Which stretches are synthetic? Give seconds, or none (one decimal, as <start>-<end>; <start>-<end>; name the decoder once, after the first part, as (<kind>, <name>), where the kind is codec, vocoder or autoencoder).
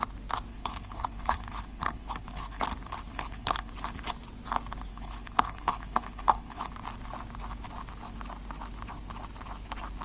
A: 0.5-2.6 (codec, HILCodec); 3.1-3.7; 4.9-6.7